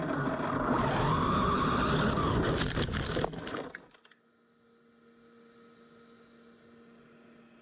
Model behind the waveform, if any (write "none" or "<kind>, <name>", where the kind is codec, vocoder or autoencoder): none